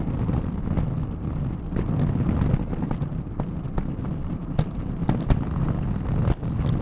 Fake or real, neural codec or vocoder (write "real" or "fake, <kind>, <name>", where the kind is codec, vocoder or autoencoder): real